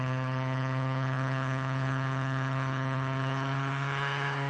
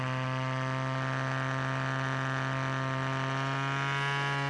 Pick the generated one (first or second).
first